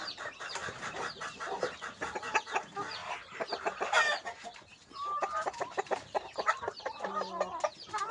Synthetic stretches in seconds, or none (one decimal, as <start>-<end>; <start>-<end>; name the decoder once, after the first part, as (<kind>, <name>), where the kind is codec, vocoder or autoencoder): 3.0-7.0 (vocoder, BigVGAN v2)